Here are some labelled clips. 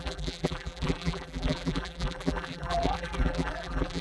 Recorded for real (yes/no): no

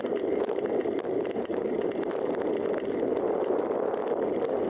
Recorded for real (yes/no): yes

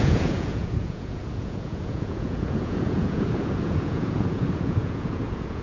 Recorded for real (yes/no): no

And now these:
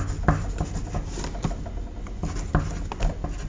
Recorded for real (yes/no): yes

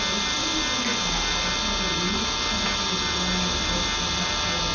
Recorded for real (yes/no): yes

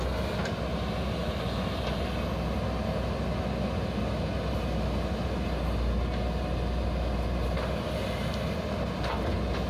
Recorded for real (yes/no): yes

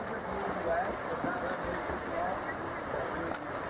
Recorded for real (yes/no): yes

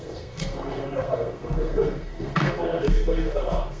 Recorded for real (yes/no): no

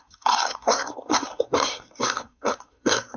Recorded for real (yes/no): no